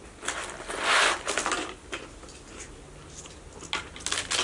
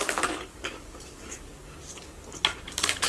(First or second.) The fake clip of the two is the second